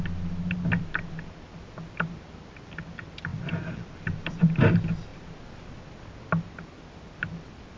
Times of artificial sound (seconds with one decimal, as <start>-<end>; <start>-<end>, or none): none

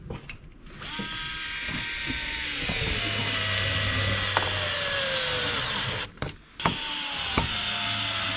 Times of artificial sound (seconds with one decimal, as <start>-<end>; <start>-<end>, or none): none

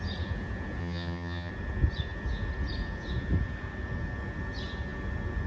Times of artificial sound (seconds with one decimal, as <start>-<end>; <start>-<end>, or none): 0.8-1.5

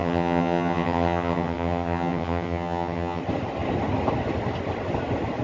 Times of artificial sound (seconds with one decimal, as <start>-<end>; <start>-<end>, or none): 0.0-3.2

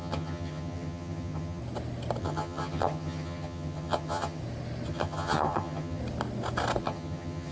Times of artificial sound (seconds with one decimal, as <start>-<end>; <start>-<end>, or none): 0.0-1.6; 2.2-4.4; 4.9-6.0; 6.8-7.5

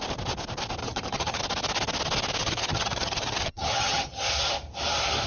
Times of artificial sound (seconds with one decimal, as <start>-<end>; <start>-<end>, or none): 0.8-1.4; 2.4-4.2

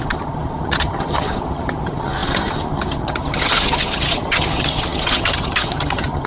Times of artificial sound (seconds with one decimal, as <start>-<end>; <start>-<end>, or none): 0.0-6.3